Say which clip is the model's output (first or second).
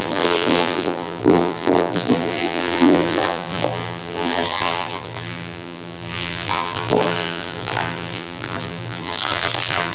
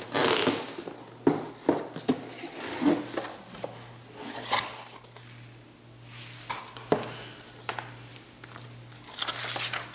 first